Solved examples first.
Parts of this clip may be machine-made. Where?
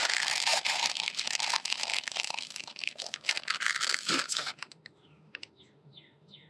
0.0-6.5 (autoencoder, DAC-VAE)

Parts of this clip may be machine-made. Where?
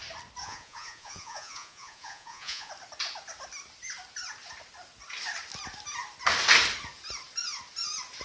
0.4-2.7 (vocoder, Vocos)